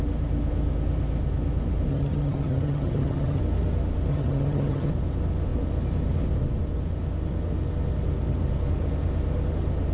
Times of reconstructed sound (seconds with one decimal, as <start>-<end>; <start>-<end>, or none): 1.9-3.4; 4.1-4.9